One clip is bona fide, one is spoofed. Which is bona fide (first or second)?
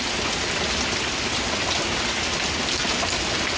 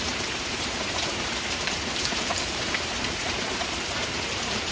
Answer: first